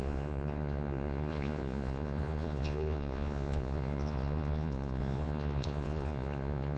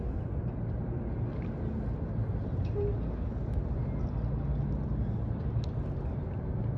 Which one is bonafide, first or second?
second